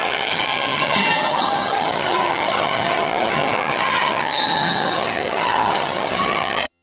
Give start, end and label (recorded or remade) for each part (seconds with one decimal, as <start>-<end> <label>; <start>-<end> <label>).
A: 0.0-6.8 remade